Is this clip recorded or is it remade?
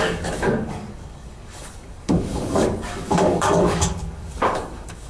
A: remade